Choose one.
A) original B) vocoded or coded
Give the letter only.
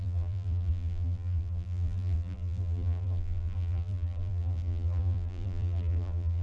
B